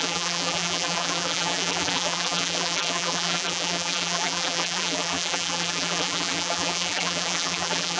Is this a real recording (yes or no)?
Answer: no